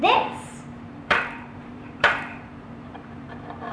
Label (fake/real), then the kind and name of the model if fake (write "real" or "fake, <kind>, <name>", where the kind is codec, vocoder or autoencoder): fake, vocoder, BigVGAN v2